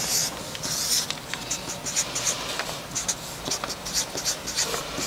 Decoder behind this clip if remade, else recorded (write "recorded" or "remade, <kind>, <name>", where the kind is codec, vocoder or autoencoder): recorded